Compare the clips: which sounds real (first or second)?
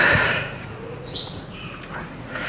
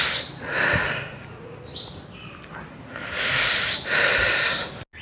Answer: second